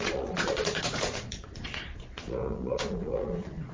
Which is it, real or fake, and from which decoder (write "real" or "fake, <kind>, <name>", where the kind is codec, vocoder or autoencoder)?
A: fake, vocoder, Vocos